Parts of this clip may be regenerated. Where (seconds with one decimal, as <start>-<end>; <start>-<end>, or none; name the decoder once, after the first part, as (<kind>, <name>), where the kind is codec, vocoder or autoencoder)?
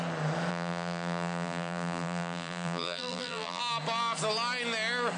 0.5-3.6 (vocoder, BigVGAN v2)